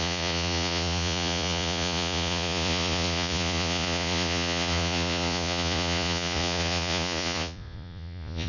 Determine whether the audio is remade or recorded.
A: remade